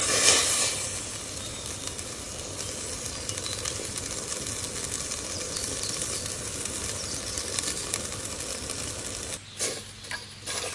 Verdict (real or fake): real